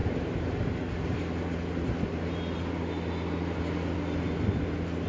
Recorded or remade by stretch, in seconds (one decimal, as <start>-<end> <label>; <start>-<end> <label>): 0.0-5.1 recorded